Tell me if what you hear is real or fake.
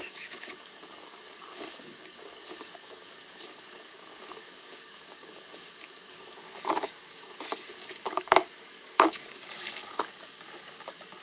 fake